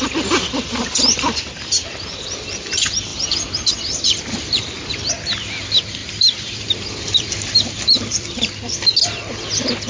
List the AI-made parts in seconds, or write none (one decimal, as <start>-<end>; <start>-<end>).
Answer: 3.1-5.1; 6.0-8.5